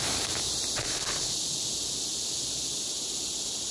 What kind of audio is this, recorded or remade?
recorded